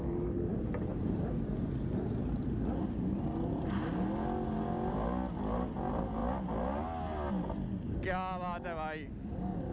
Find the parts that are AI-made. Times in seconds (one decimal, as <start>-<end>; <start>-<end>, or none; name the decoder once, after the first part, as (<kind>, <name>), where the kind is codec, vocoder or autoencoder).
none